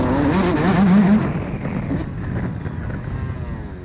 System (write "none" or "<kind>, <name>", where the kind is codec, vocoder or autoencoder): none